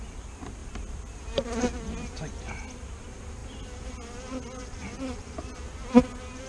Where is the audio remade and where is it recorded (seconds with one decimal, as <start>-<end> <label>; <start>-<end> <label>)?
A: 0.0-6.5 recorded